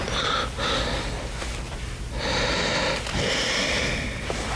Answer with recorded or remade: remade